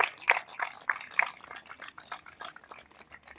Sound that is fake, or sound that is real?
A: real